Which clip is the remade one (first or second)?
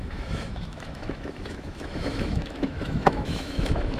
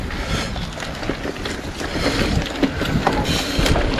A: first